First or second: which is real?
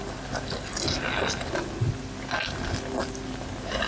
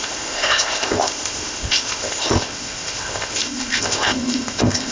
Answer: first